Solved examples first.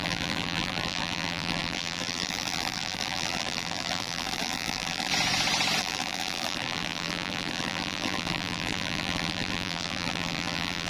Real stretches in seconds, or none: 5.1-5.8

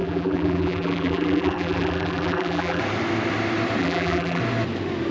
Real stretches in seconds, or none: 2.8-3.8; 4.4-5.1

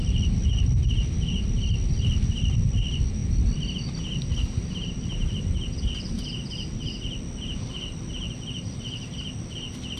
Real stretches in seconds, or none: 0.0-10.0

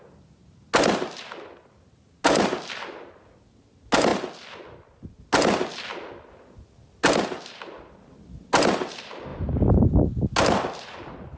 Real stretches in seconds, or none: 0.0-9.3; 10.2-11.4

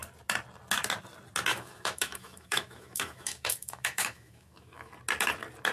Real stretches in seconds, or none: 0.0-1.5; 4.9-5.7

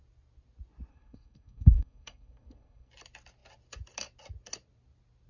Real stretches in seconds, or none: 0.0-0.9; 2.9-5.3

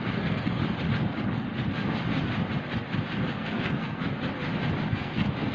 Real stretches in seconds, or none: 0.6-3.3; 4.0-4.9

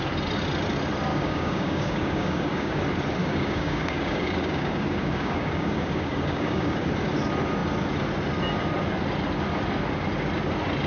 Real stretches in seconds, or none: 0.0-1.1; 2.8-3.2; 6.9-10.9